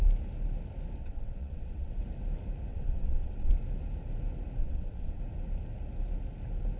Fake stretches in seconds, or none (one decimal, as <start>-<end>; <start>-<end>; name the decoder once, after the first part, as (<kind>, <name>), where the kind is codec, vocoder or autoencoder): 1.0-2.0 (vocoder, WaveNeXt); 2.7-3.5; 4.6-5.2